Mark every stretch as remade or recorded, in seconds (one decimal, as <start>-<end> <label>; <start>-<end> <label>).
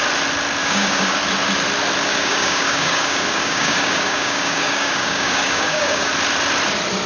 0.0-0.6 recorded; 0.6-1.2 remade; 1.2-2.1 recorded; 2.1-6.1 remade; 6.1-7.1 recorded